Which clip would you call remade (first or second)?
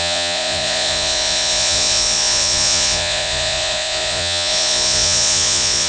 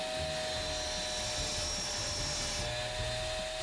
first